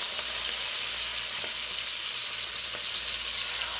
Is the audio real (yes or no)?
yes